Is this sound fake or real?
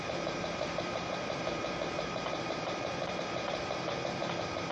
fake